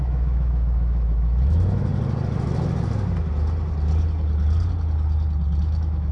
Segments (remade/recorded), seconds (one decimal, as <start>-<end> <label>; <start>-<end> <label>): 0.0-1.9 remade; 1.9-5.6 recorded; 5.6-6.1 remade